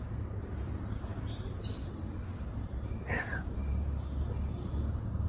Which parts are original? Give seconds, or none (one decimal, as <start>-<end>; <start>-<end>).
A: 0.0-5.3